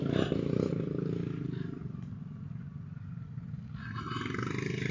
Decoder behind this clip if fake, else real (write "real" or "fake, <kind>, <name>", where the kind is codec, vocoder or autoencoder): real